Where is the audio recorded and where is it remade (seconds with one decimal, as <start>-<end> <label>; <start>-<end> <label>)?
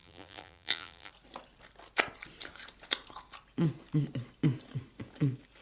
0.0-1.1 remade; 1.1-5.6 recorded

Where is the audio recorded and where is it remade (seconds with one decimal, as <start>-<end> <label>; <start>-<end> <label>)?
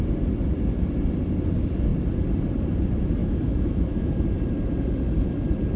0.0-3.2 recorded; 3.2-4.1 remade; 4.1-5.8 recorded